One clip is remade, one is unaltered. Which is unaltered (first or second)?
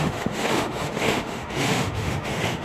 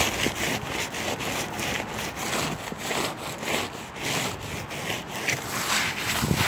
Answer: second